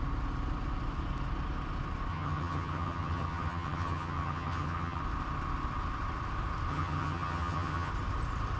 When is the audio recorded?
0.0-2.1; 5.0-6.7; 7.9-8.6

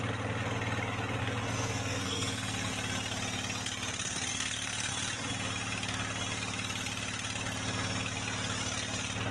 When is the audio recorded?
0.0-1.2; 2.7-4.3; 4.9-9.3

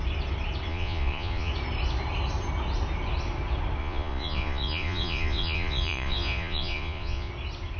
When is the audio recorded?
0.0-0.7; 1.5-3.8; 7.3-7.8